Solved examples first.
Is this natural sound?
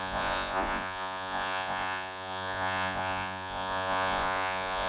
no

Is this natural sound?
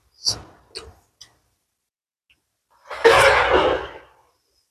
yes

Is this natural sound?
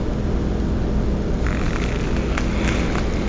yes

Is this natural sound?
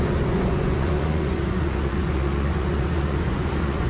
no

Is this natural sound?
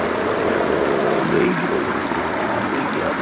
yes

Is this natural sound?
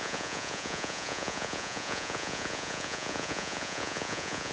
no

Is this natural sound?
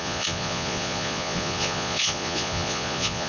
no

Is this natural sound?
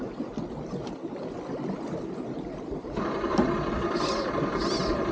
yes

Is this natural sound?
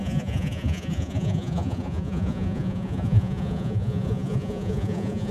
no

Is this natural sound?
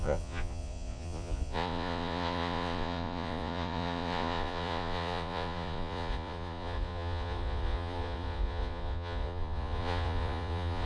no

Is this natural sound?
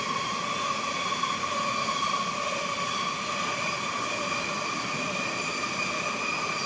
yes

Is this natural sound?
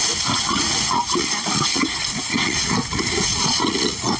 no